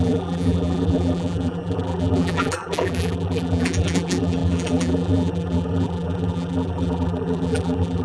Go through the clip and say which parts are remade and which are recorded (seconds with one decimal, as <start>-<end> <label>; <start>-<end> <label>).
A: 0.0-8.0 remade